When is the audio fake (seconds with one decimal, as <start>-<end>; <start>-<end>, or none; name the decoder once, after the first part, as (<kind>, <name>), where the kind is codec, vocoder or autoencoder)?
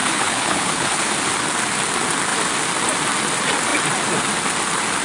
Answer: 0.0-1.1 (codec, HILCodec)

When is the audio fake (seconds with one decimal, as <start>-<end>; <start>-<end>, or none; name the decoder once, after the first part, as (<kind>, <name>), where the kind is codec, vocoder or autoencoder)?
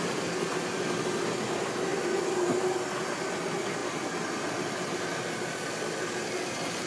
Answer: none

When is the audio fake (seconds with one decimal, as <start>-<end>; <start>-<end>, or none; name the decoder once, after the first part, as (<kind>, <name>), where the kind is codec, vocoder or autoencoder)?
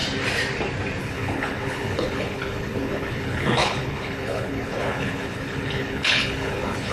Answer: 1.0-6.9 (codec, HILCodec)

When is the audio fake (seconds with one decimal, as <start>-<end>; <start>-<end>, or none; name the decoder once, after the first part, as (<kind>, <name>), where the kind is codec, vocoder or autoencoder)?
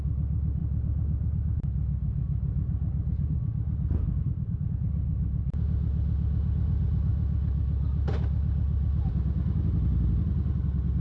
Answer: none